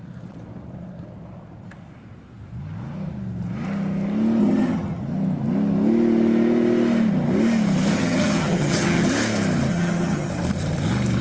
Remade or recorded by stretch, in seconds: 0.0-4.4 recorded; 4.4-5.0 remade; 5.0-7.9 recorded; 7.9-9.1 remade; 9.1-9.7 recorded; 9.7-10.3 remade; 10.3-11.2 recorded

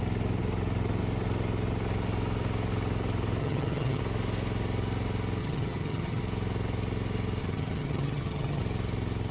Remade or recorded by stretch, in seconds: 0.0-3.4 recorded; 3.4-4.0 remade; 4.0-5.4 recorded; 5.4-6.2 remade; 6.2-7.4 recorded; 7.4-8.6 remade; 8.6-9.3 recorded

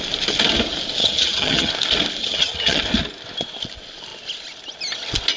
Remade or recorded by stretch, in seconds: 0.0-1.0 recorded; 1.0-1.7 remade; 1.7-2.2 recorded; 2.2-2.8 remade; 2.8-5.4 recorded